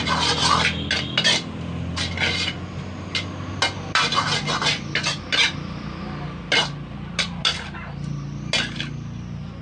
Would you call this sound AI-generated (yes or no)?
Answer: no